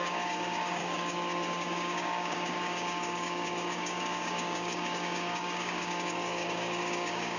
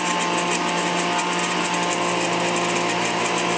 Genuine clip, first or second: second